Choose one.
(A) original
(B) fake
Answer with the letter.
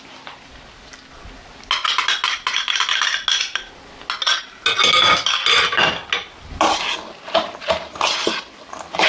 A